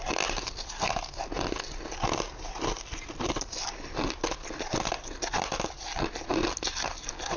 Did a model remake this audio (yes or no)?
no